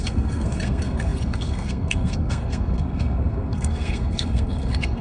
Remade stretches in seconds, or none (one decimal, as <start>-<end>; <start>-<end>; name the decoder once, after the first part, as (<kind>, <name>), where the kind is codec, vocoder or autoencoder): 0.0-5.0 (codec, SNAC)